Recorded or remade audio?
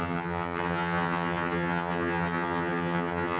remade